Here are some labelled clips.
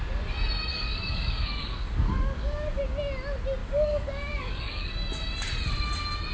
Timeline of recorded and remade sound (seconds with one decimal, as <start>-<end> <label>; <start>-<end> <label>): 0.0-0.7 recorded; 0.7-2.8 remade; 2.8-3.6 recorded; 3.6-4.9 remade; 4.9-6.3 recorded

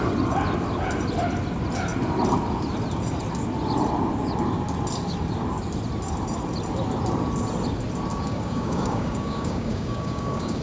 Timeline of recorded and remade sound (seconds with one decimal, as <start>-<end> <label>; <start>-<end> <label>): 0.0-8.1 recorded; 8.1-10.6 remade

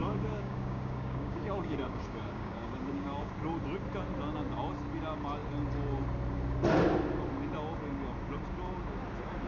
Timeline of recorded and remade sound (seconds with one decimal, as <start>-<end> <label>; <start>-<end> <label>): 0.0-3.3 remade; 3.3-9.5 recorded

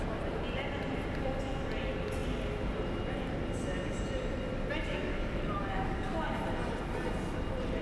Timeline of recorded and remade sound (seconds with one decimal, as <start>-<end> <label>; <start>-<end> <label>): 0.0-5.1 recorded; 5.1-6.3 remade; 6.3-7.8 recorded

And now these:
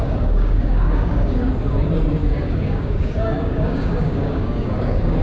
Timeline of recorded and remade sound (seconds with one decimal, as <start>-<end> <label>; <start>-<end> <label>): 0.0-1.5 remade; 1.5-2.2 recorded; 2.2-5.2 remade